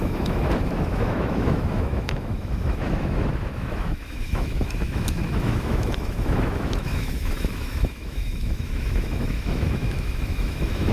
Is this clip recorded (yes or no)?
no